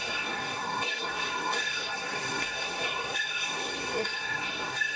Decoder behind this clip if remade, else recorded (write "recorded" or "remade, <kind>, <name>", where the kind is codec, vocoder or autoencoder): remade, codec, SNAC